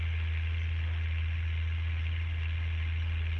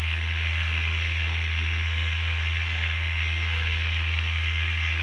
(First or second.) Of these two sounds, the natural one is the first